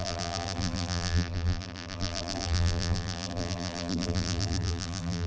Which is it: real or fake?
fake